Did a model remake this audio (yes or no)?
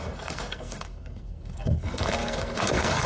yes